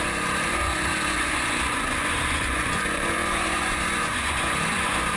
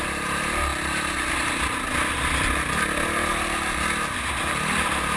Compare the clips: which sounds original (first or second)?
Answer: second